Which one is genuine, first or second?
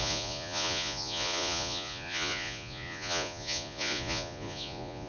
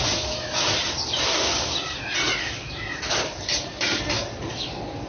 second